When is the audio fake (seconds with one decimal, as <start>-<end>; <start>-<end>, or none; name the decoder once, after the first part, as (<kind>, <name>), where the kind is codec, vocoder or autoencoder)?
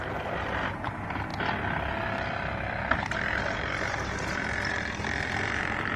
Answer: none